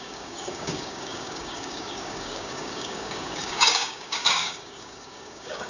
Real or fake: fake